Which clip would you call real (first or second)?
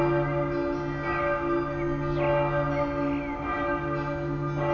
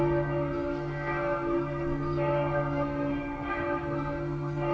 first